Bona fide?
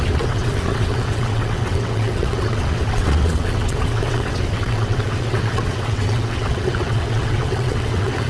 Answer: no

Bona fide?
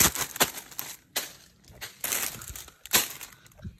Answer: yes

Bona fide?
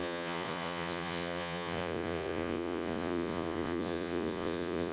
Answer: no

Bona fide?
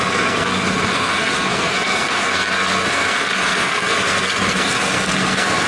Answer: no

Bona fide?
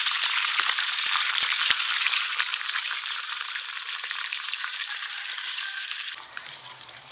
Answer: no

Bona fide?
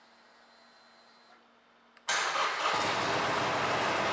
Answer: yes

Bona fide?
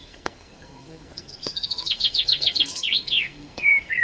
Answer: no